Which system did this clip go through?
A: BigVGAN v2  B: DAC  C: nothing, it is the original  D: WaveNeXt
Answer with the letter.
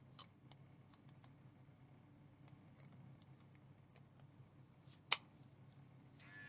C